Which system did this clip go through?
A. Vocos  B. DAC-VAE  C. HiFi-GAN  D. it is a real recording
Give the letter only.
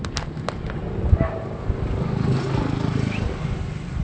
D